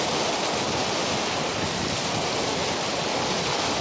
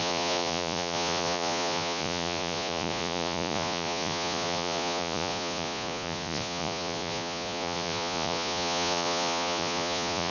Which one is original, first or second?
first